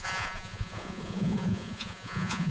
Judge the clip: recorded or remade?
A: remade